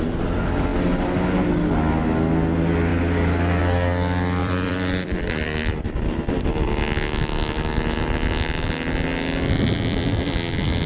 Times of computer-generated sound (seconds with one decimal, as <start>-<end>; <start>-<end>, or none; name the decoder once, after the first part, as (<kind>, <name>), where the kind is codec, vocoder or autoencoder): 4.4-5.8 (vocoder, BigVGAN v2)